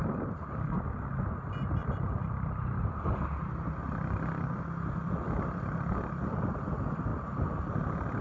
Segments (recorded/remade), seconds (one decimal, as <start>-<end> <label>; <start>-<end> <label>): 0.0-0.9 remade; 0.9-8.2 recorded